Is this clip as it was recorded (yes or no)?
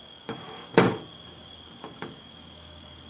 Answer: no